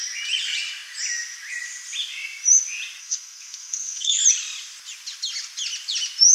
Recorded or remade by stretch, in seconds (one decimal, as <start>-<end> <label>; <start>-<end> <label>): 0.0-3.0 recorded; 3.0-4.2 remade; 4.2-6.3 recorded